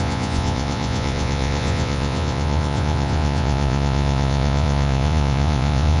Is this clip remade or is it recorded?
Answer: remade